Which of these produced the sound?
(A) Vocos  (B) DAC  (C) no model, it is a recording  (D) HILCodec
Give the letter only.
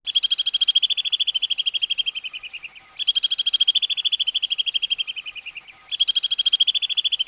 C